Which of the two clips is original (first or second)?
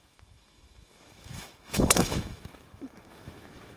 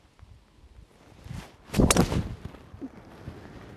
second